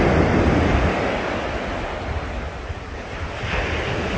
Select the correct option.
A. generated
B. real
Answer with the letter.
B